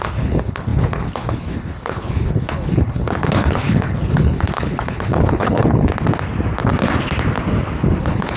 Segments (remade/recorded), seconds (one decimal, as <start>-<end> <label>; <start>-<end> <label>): 0.0-5.9 remade; 5.9-8.0 recorded; 8.0-8.4 remade